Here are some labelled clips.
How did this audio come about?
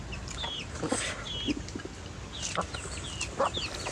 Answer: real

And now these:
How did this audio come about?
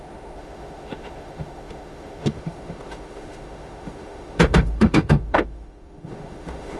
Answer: fake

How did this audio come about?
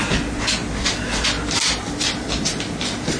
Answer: real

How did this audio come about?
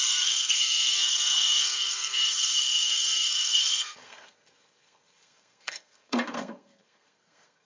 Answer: fake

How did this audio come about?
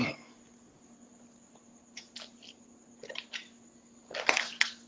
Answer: real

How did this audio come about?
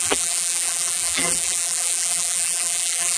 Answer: fake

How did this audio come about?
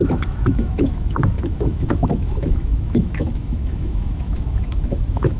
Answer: fake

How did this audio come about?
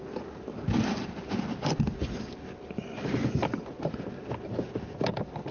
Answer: real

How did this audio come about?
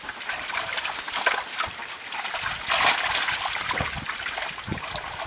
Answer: real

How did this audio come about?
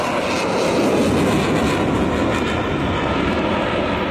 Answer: real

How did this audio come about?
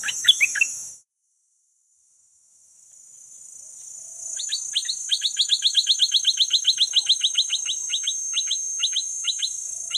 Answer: fake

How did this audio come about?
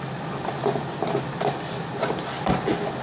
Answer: real